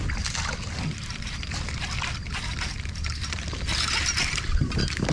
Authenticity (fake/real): real